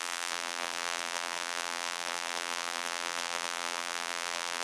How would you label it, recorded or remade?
remade